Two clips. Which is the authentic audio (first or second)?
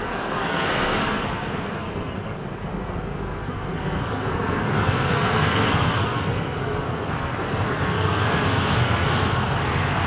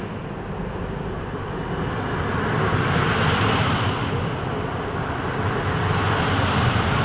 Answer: second